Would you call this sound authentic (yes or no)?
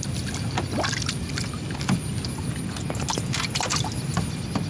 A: yes